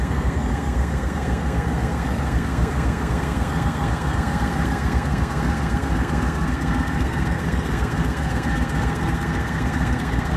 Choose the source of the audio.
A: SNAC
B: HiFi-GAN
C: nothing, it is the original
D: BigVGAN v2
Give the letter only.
A